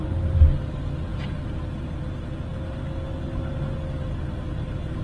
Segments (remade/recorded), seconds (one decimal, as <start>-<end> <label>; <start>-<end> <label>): 0.0-5.0 recorded

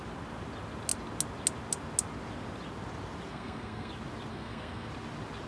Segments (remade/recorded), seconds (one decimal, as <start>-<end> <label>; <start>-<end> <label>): 0.0-3.3 recorded; 3.3-3.9 remade; 3.9-4.3 recorded; 4.3-4.9 remade; 4.9-5.5 recorded

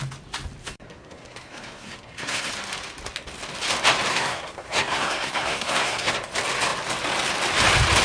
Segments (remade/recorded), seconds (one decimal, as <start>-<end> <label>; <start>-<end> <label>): 0.0-0.6 recorded; 0.6-2.5 remade; 2.5-4.1 recorded; 4.1-6.1 remade; 6.1-8.0 recorded